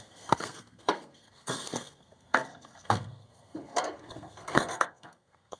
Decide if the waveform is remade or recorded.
remade